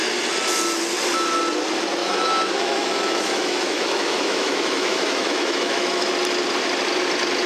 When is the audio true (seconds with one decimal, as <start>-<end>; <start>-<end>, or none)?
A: 0.0-2.0; 6.1-7.5